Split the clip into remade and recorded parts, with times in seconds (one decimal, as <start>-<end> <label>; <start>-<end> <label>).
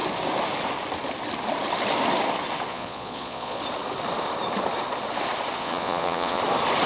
0.0-2.7 recorded; 2.7-3.6 remade; 3.6-5.6 recorded; 5.6-6.4 remade; 6.4-6.9 recorded